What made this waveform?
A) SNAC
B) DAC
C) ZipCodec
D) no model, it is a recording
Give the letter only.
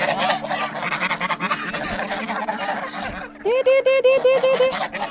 D